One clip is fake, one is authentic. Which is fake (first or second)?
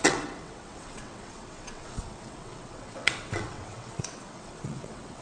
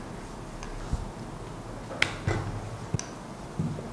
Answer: first